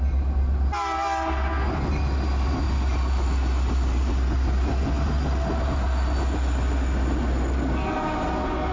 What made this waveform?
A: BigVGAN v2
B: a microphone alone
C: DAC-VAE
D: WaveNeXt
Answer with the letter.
B